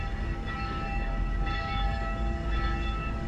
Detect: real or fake fake